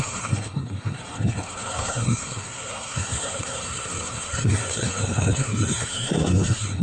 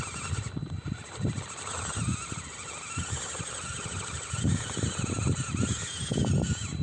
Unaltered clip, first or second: second